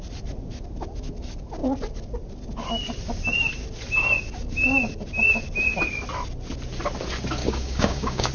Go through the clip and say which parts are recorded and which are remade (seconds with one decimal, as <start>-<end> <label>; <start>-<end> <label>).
0.0-7.4 recorded; 7.4-8.3 remade